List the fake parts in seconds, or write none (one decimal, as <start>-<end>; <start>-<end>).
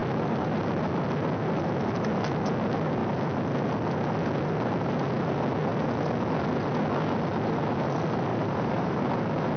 8.3-9.1